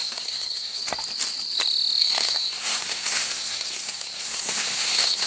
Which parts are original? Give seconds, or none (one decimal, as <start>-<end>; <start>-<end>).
0.8-2.0